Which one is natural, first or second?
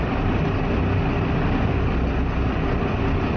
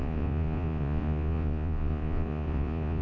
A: first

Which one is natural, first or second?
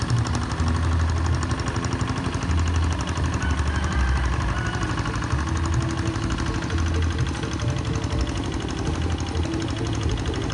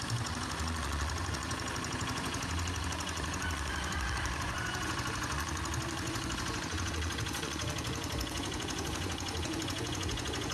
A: first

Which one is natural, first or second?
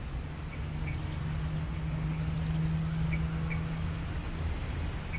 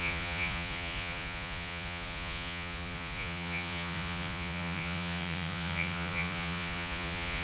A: first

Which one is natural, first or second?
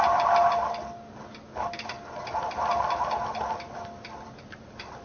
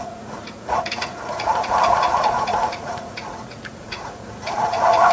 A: first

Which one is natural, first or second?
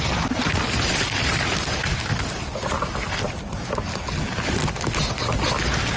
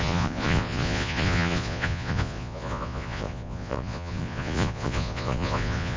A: first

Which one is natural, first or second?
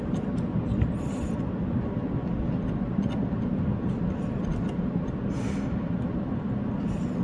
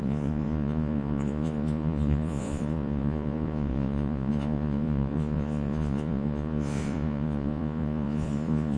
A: first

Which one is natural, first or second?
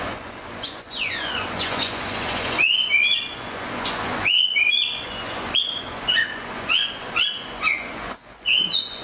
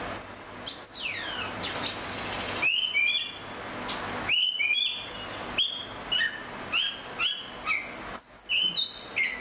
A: second